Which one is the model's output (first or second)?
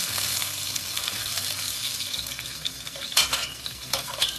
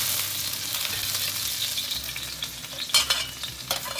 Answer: first